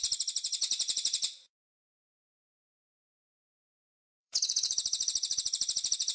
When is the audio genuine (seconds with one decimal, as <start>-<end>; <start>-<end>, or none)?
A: none